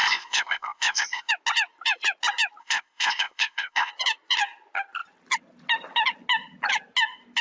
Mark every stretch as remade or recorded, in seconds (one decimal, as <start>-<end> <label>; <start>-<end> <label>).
0.0-1.3 remade; 1.3-2.6 recorded; 2.6-3.9 remade; 3.9-7.4 recorded